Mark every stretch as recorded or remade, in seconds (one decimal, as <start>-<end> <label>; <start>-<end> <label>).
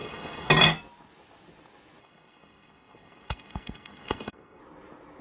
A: 0.0-0.5 remade; 0.5-2.0 recorded; 2.0-4.6 remade; 4.6-5.2 recorded